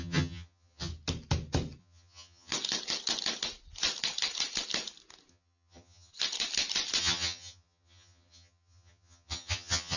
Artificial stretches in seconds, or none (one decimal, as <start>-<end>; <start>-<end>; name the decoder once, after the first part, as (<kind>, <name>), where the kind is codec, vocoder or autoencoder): 0.0-0.9 (vocoder, HiFi-GAN); 1.8-2.5; 5.3-6.1; 7.0-10.0